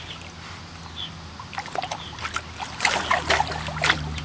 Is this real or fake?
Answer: real